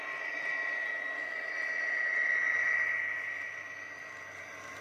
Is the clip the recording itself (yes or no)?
yes